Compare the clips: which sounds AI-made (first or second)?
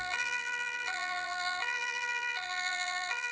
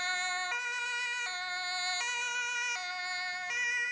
first